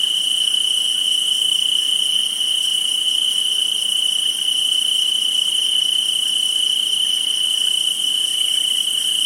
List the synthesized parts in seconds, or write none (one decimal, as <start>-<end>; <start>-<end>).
2.7-5.3